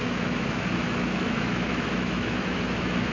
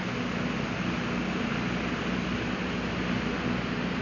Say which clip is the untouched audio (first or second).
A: second